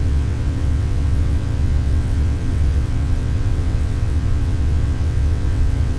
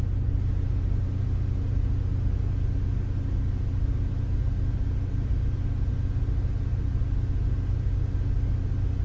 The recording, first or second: second